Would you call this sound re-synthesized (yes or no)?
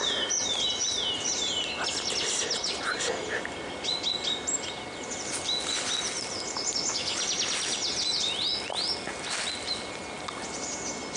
no